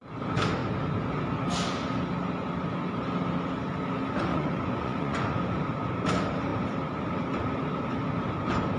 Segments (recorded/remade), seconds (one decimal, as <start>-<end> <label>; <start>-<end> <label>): 0.0-4.3 recorded; 4.3-5.4 remade; 5.4-8.8 recorded